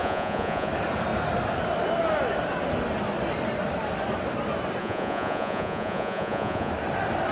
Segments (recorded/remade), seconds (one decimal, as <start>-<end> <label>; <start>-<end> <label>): 0.0-0.7 remade; 0.7-4.8 recorded; 4.8-6.7 remade; 6.7-7.3 recorded